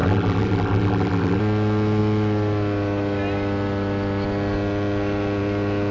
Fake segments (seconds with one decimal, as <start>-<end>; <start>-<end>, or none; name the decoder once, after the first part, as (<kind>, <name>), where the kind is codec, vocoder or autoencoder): 0.0-1.4 (vocoder, BigVGAN v2)